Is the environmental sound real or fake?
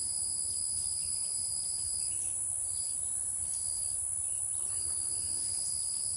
real